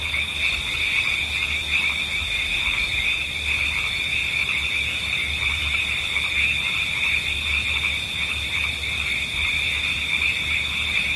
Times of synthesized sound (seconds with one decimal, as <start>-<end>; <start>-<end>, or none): 4.2-4.7